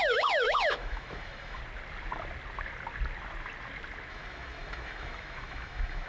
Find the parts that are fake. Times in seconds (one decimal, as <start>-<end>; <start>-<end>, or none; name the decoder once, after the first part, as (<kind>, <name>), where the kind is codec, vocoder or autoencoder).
0.0-1.6 (autoencoder, DAC-VAE); 4.1-6.1